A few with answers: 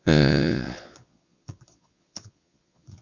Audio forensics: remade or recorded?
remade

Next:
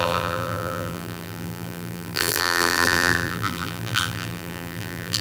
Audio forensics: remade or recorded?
remade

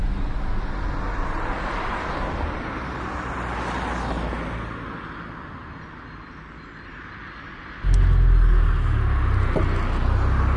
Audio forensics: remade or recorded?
recorded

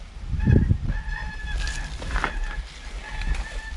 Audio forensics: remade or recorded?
recorded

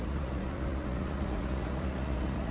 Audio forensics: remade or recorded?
remade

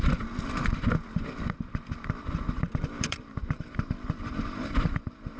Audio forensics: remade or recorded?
remade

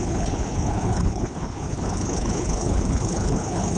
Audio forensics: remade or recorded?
remade